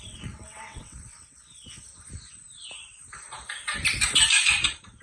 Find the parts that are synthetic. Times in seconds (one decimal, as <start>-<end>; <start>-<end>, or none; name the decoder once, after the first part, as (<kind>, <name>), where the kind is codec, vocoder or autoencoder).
0.0-1.9 (vocoder, WaveNeXt)